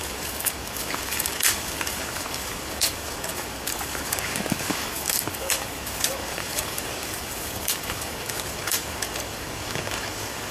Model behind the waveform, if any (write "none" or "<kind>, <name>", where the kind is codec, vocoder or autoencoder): codec, DAC